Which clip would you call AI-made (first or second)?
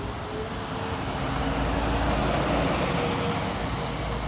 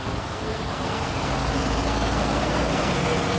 second